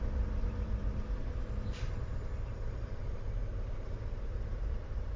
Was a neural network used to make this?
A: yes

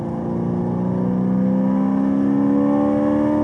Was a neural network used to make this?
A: no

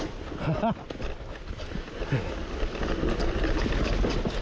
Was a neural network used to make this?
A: no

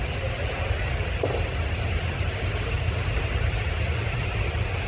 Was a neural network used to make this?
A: yes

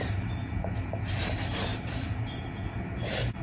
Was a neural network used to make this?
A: yes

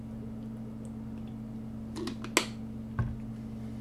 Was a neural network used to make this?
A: no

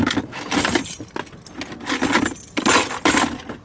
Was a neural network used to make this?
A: no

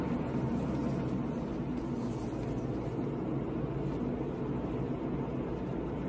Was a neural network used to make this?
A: no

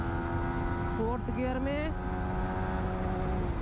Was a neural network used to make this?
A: no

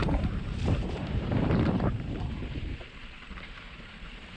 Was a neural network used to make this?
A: yes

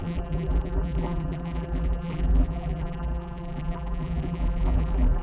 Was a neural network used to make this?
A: yes